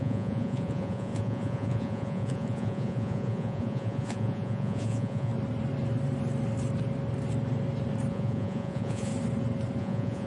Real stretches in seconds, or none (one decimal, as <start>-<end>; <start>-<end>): 5.3-8.1; 9.1-9.8